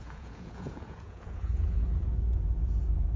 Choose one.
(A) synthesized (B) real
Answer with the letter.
A